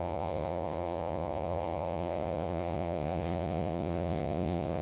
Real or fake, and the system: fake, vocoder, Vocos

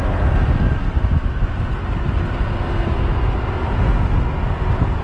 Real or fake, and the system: real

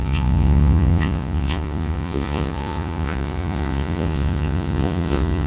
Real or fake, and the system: fake, vocoder, Vocos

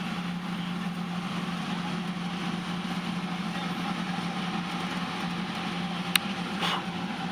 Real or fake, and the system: real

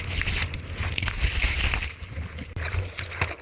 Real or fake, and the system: real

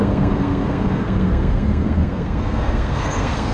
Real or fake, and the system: fake, codec, SNAC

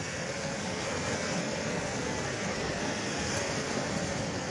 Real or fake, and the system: fake, codec, SNAC